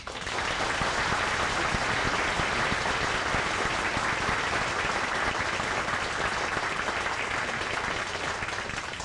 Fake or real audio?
real